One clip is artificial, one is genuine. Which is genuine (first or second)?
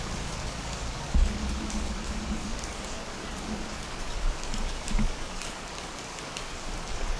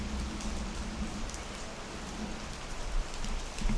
second